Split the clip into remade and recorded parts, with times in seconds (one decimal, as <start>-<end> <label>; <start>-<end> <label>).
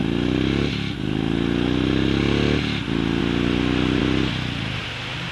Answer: 0.0-5.3 recorded